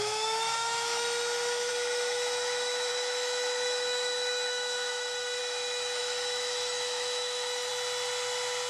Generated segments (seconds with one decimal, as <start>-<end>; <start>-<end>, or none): 0.0-7.7